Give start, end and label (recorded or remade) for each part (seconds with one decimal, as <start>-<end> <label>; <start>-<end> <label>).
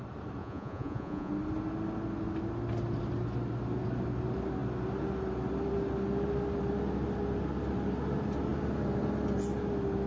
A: 0.0-0.4 recorded; 0.4-1.3 remade; 1.3-10.1 recorded